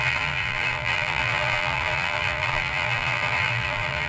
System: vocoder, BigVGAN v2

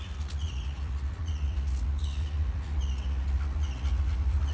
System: vocoder, Vocos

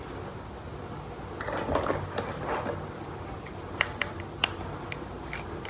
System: none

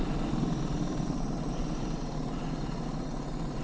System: vocoder, BigVGAN v2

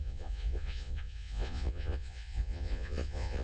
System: vocoder, Vocos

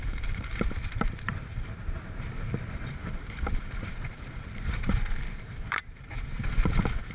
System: vocoder, BigVGAN v2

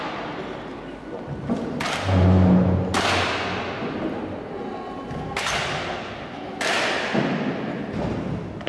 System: none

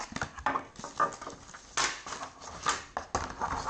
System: none